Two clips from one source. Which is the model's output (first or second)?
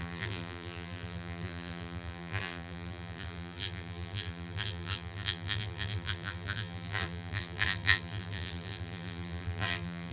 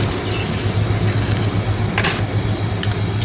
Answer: first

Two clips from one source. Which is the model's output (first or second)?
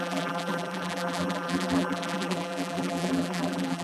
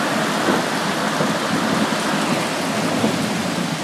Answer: first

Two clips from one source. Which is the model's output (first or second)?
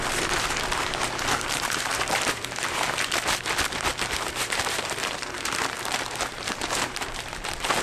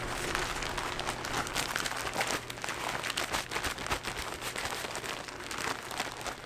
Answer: first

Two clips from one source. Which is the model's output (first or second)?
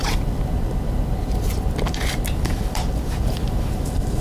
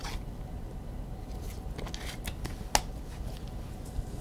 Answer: first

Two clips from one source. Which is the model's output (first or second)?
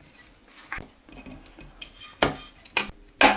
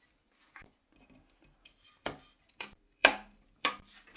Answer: second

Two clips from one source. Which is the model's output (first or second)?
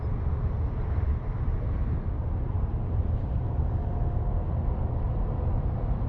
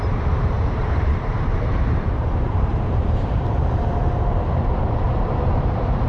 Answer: second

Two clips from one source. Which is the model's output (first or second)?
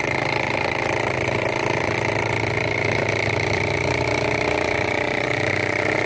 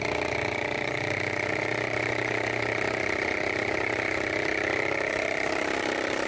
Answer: first